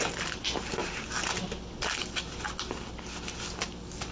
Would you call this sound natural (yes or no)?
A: yes